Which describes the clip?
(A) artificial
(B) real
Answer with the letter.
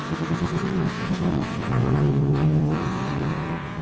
A